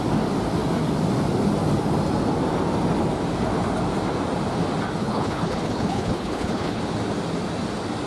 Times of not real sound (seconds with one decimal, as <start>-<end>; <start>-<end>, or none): 5.0-6.8